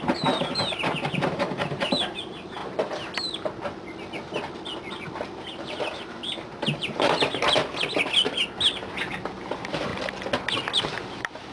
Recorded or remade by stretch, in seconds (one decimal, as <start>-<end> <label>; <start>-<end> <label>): 0.0-2.6 remade; 2.6-5.5 recorded; 5.5-7.6 remade; 7.6-9.4 recorded; 9.4-9.9 remade; 9.9-10.8 recorded; 10.8-11.5 remade